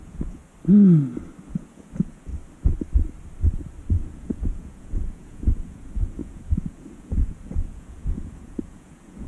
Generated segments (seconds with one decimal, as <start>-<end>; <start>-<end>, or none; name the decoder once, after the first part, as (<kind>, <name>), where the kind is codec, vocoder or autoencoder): 0.0-0.4 (vocoder, Vocos); 1.4-2.3; 3.9-9.3

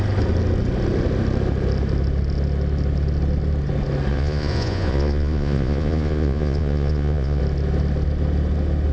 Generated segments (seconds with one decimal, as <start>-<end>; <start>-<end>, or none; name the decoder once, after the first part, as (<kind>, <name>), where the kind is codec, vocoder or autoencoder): 4.1-7.4 (vocoder, Vocos)

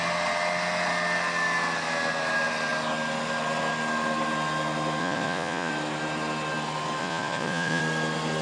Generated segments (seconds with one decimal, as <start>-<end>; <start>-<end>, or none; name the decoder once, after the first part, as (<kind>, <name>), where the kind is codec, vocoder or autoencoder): 5.0-5.7 (vocoder, Vocos); 7.0-7.8

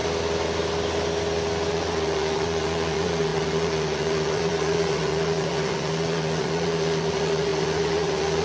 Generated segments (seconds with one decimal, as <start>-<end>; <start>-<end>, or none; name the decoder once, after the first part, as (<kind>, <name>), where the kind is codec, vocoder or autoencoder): 1.7-8.4 (vocoder, Vocos)

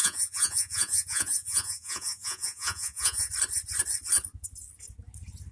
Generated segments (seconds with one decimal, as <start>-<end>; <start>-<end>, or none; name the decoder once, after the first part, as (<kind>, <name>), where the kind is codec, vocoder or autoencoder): 0.0-3.3 (vocoder, Vocos)

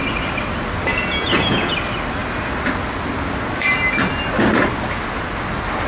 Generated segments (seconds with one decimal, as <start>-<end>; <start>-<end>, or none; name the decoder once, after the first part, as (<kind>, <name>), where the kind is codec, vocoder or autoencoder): 0.9-1.7 (vocoder, Vocos)